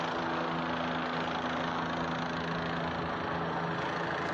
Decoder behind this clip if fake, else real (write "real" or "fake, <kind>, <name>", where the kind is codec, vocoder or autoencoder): real